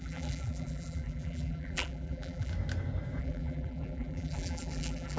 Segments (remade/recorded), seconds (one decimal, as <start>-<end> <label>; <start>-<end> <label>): 0.0-2.5 remade; 2.5-3.2 recorded; 3.2-5.2 remade

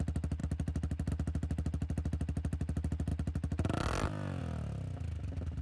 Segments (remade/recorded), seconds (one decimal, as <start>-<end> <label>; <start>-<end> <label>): 0.0-5.6 recorded

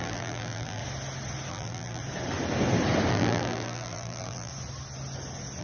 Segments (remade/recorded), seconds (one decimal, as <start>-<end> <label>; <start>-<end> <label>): 0.0-0.8 remade; 0.8-1.5 recorded; 1.5-2.0 remade; 2.0-3.1 recorded; 3.1-4.5 remade; 4.5-5.6 recorded

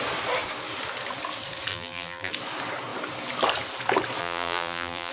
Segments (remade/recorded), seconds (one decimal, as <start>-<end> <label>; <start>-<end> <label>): 0.0-1.7 recorded; 1.7-2.3 remade; 2.3-4.2 recorded; 4.2-5.1 remade

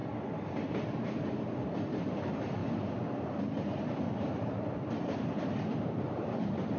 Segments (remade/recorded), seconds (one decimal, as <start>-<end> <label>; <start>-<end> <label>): 0.0-6.8 remade